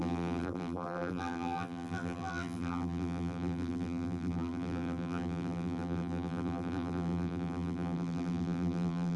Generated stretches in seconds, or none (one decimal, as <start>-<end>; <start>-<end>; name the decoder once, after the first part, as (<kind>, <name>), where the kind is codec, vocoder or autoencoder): 0.0-9.2 (vocoder, BigVGAN v2)